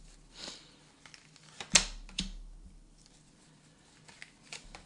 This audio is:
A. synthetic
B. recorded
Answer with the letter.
B